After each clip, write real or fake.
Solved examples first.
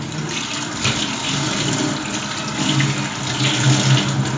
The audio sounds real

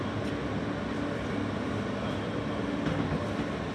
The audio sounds real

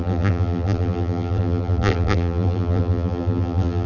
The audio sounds fake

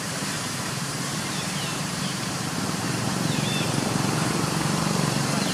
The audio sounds fake